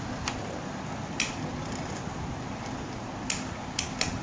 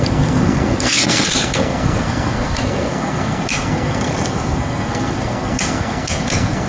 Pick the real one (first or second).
first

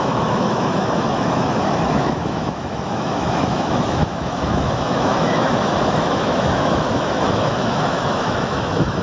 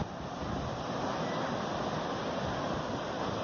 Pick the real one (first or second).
second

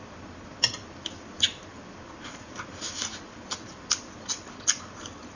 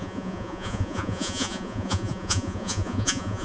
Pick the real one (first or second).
first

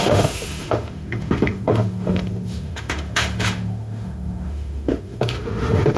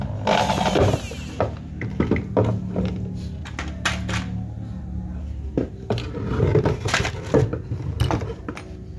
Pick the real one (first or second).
second